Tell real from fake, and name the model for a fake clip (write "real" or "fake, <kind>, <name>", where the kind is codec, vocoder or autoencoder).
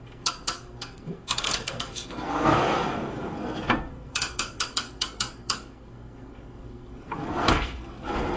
fake, codec, SNAC